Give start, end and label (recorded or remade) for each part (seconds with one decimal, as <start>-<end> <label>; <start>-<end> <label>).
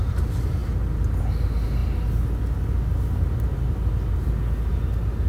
0.0-5.3 recorded